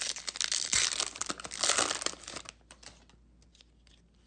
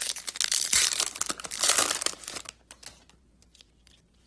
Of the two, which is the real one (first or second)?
first